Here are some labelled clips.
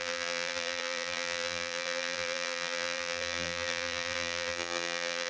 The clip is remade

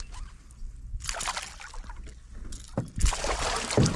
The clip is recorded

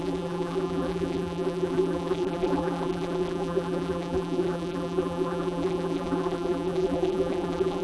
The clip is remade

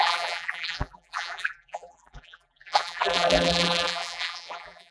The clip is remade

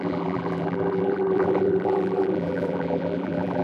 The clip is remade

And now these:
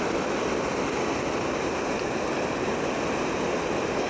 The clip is recorded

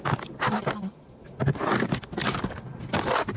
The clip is recorded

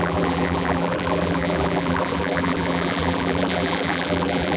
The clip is remade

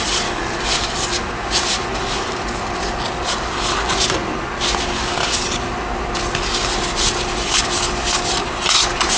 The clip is recorded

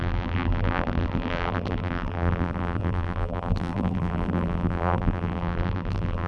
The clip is remade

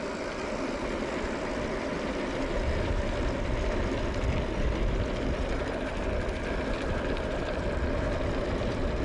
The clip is remade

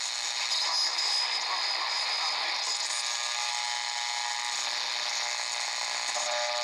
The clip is recorded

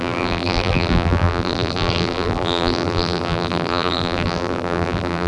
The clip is remade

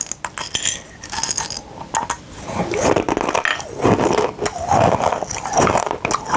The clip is recorded